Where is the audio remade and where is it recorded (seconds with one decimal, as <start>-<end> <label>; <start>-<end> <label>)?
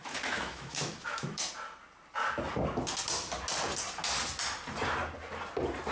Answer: 0.0-1.5 remade; 1.5-5.9 recorded